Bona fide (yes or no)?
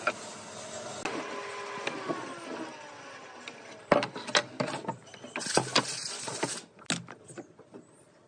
yes